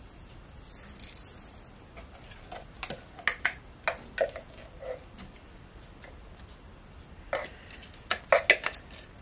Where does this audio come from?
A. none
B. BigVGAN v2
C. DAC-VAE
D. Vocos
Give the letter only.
A